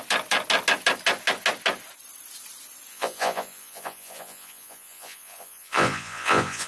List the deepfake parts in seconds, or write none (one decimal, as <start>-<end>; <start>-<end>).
2.9-6.7